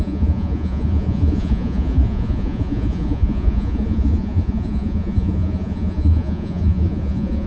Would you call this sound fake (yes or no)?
yes